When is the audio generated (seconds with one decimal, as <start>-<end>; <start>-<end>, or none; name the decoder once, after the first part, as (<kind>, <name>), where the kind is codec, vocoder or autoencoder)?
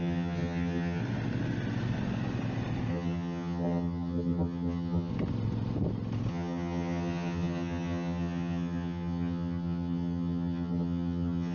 0.0-1.0 (vocoder, HiFi-GAN); 2.9-5.1; 6.3-11.5